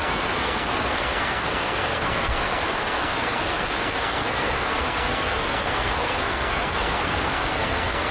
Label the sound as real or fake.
fake